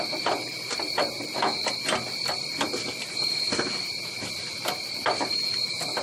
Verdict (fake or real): real